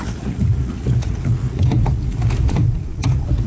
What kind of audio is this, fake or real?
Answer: fake